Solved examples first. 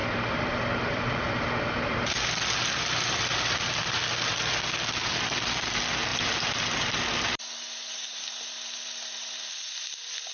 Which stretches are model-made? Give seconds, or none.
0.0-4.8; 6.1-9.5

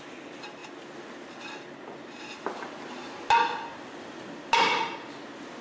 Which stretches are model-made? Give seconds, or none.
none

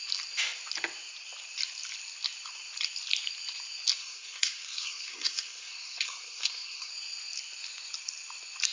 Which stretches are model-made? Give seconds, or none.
4.0-6.9

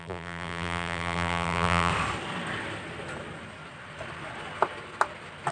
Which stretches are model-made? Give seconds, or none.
0.0-1.9

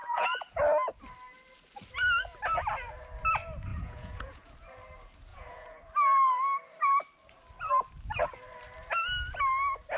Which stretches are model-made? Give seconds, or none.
0.0-0.5; 3.7-4.5; 5.3-5.8